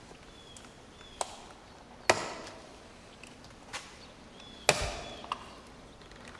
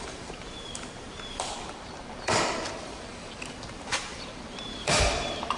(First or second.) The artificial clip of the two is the second